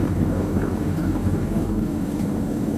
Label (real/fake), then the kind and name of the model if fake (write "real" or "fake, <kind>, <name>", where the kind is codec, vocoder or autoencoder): fake, codec, DAC